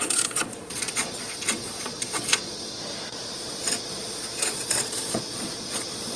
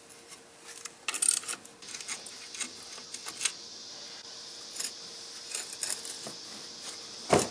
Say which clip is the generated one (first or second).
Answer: first